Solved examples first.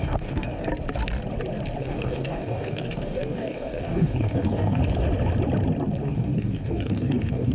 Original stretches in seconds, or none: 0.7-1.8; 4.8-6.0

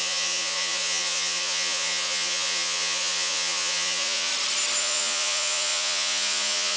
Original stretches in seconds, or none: 4.3-4.8

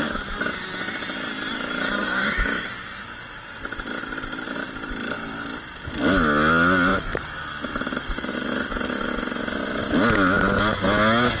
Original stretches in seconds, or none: 0.0-2.0; 2.7-11.4

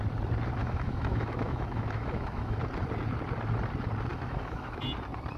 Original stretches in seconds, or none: 0.0-0.6; 2.6-4.1; 4.8-5.4

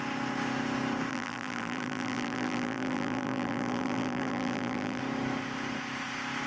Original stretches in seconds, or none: 0.0-1.1; 5.0-6.5

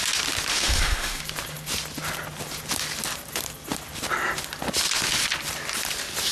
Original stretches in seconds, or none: 0.0-0.5; 1.2-6.3